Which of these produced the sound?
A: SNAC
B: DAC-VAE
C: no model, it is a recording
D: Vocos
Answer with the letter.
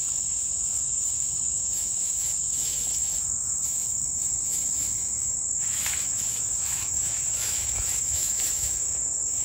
B